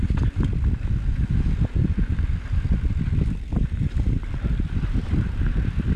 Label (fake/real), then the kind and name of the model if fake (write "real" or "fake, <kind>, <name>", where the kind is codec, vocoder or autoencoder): fake, vocoder, BigVGAN v2